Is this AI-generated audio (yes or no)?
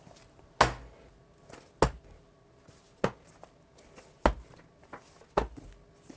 no